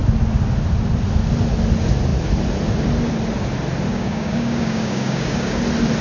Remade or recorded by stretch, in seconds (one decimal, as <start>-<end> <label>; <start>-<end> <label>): 0.0-3.9 recorded; 3.9-5.6 remade; 5.6-6.0 recorded